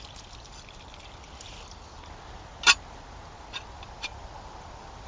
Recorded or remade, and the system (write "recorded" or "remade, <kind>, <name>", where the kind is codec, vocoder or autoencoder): recorded